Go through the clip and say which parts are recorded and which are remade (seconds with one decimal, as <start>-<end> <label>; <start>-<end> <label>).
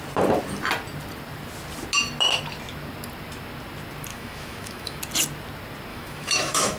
0.0-4.1 recorded; 4.1-5.0 remade; 5.0-5.9 recorded; 5.9-6.8 remade